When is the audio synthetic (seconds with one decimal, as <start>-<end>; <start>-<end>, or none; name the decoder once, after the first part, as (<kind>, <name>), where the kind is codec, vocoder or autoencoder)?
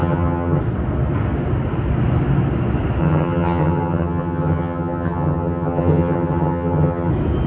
0.0-0.6 (vocoder, HiFi-GAN); 3.0-7.1